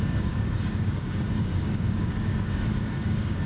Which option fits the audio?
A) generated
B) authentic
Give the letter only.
A